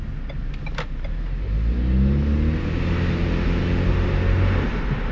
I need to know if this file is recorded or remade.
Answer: recorded